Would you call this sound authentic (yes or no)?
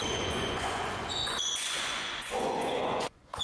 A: no